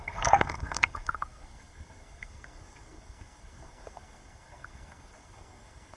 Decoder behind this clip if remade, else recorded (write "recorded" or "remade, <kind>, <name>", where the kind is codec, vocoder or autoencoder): remade, codec, SNAC